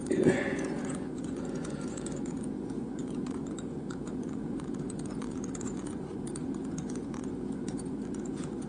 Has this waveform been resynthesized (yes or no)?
yes